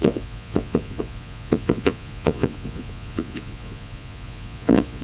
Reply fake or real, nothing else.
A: fake